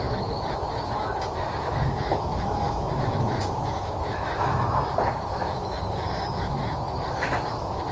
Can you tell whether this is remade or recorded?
remade